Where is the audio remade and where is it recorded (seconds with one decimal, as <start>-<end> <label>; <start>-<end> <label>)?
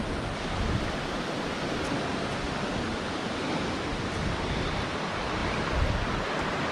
0.0-6.7 recorded